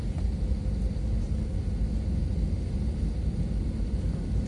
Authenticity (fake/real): real